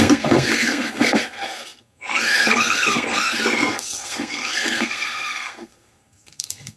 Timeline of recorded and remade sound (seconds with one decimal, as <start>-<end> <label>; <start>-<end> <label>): 0.0-6.8 remade